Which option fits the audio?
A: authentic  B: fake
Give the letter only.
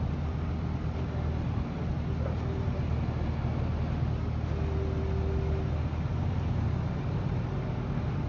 A